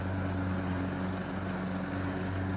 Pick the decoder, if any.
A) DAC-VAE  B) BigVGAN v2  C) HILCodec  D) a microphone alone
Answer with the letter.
D